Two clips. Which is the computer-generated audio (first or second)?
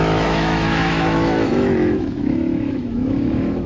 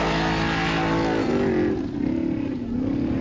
first